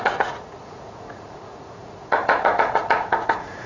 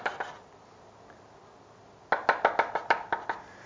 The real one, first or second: second